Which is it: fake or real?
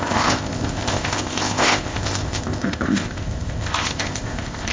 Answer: fake